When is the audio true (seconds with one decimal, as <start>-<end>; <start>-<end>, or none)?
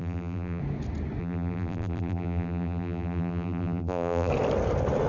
0.6-1.2; 4.3-5.1